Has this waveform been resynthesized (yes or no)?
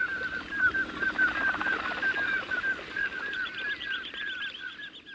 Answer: no